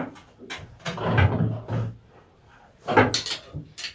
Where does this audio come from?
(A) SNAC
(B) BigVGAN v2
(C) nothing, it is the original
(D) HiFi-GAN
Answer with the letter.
C